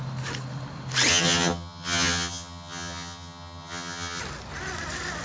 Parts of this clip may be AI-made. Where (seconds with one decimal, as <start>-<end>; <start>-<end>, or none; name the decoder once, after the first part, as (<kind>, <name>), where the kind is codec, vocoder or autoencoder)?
1.1-4.2 (vocoder, HiFi-GAN)